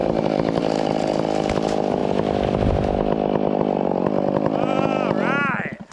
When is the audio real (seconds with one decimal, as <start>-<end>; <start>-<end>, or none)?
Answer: 1.1-5.9